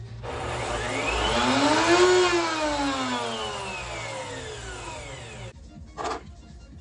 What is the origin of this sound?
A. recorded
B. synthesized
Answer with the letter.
A